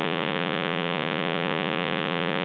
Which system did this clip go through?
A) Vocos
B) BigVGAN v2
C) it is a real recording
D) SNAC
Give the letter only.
A